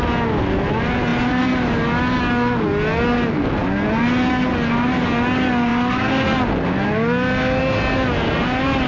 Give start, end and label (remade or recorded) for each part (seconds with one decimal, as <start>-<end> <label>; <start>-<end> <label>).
0.0-8.9 recorded